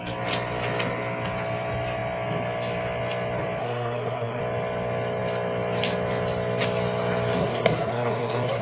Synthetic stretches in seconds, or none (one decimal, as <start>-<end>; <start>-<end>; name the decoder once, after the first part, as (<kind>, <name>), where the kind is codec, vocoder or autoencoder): 3.6-4.4 (codec, SNAC); 7.4-8.6